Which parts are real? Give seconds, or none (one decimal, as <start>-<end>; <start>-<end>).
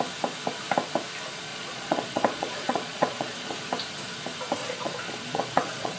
0.0-1.5; 3.5-4.6